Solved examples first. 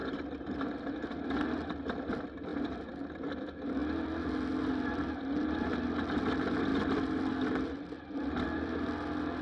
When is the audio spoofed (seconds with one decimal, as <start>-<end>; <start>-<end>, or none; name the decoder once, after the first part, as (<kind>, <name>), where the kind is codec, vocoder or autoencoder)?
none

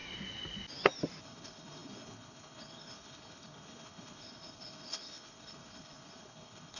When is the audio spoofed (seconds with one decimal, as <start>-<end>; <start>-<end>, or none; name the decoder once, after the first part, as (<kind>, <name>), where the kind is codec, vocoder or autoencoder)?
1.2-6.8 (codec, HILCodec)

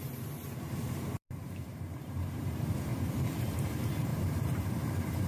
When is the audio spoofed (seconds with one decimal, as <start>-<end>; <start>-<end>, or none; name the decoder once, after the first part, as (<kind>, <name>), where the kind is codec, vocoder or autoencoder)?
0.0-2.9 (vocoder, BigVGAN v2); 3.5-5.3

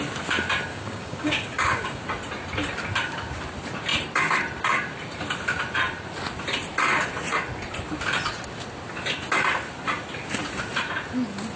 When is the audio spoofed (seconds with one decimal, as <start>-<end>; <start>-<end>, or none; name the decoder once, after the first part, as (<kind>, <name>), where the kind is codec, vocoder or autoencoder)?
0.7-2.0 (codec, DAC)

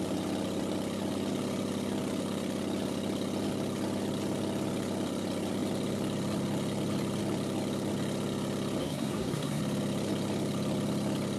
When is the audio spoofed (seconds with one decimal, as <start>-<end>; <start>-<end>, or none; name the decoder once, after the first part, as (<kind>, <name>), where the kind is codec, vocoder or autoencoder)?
8.8-9.6 (codec, SNAC)

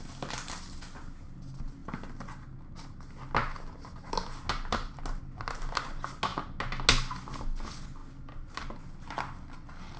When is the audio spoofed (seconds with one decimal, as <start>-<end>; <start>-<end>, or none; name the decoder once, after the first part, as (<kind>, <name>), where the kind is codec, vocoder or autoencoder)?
none